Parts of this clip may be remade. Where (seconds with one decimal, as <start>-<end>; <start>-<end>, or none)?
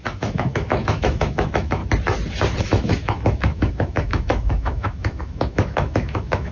0.0-1.8; 2.6-6.5